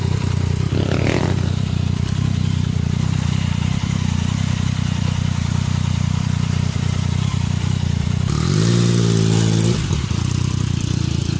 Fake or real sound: fake